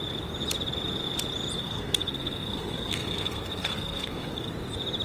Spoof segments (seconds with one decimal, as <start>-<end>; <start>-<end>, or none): 1.6-4.5